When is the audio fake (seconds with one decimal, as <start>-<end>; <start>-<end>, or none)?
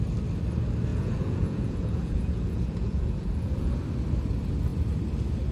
0.9-3.8